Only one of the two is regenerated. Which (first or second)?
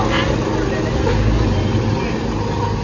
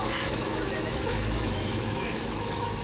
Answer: second